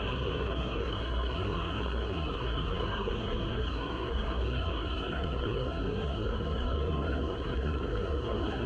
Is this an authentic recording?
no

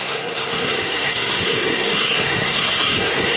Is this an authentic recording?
no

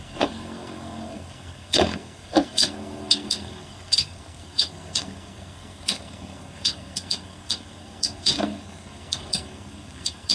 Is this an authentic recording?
no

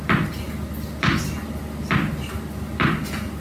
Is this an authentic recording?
yes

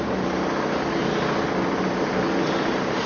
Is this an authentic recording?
yes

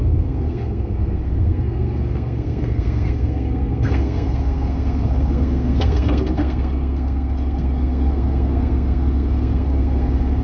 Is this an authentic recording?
no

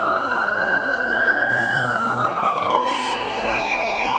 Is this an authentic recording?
no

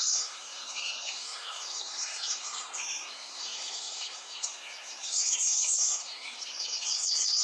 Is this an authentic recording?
no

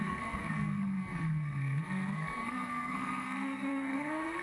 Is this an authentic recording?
no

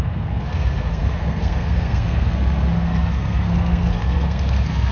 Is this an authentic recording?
no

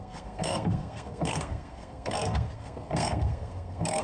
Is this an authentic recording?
no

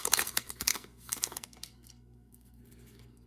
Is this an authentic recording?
no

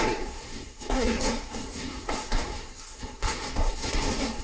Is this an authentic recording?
no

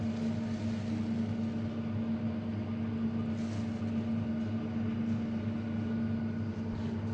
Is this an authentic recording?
yes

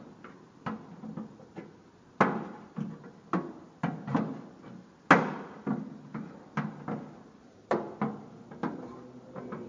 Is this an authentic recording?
yes